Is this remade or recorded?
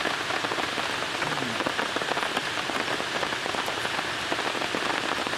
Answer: recorded